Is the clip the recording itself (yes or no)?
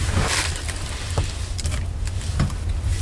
no